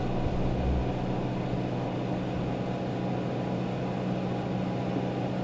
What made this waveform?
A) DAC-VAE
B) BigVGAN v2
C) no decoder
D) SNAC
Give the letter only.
C